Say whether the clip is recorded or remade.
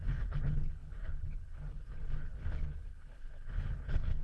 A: remade